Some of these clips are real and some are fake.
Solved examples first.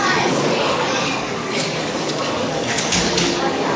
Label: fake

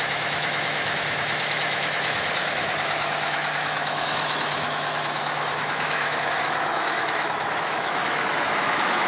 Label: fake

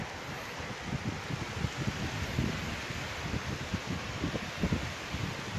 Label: real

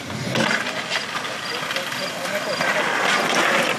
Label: real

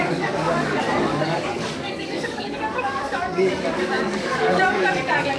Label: fake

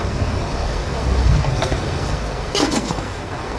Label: fake